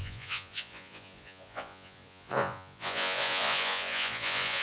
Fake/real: fake